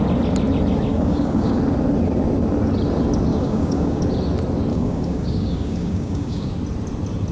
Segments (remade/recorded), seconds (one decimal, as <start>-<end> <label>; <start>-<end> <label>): 0.0-0.9 recorded; 0.9-1.6 remade; 1.6-3.3 recorded; 3.3-4.0 remade; 4.0-4.7 recorded; 4.7-6.5 remade; 6.5-7.3 recorded